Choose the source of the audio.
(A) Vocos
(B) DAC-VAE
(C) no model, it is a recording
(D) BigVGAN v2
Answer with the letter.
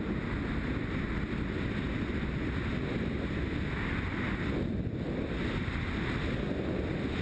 C